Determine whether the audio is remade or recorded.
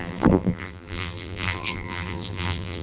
remade